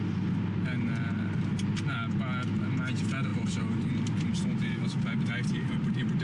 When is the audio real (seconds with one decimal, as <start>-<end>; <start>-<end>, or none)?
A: 0.0-3.3; 5.3-6.2